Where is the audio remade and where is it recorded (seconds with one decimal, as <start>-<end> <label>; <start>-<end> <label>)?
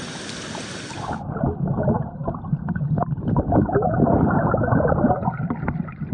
0.0-6.1 recorded